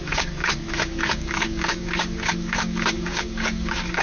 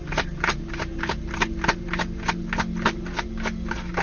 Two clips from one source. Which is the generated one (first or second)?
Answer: first